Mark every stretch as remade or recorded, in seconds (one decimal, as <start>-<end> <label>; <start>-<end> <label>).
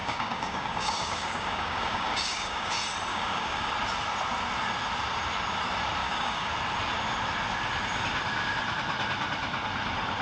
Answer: 0.0-2.7 remade; 2.7-3.1 recorded; 3.1-3.7 remade; 3.7-6.0 recorded; 6.0-6.5 remade; 6.5-10.2 recorded